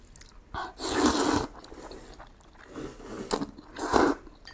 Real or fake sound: real